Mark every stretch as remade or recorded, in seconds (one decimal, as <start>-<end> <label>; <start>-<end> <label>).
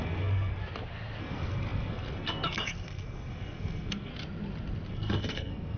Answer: 0.0-0.6 remade; 0.6-1.2 recorded; 1.2-4.1 remade; 4.1-4.9 recorded; 4.9-5.8 remade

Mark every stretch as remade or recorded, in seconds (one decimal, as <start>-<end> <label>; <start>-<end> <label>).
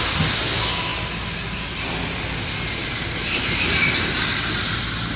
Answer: 0.0-5.2 recorded